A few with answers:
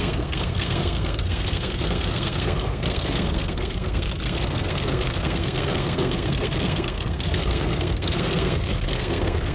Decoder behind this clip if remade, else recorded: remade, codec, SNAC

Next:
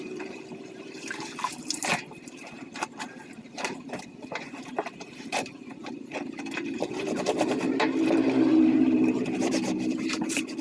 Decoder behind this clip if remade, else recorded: remade, vocoder, BigVGAN v2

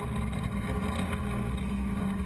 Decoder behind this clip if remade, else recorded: recorded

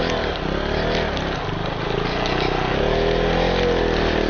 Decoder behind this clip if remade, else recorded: recorded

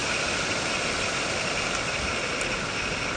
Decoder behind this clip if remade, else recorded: recorded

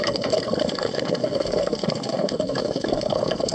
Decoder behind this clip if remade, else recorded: remade, codec, SNAC